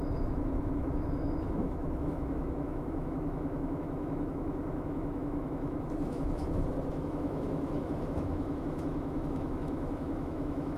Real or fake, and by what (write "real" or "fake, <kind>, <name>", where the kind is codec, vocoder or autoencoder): fake, autoencoder, DAC-VAE